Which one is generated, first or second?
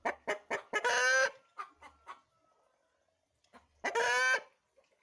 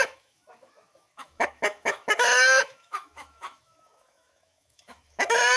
second